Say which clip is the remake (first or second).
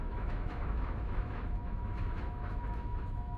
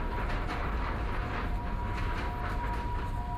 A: first